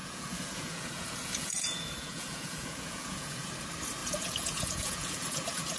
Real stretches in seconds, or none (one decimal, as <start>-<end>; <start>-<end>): 3.5-4.0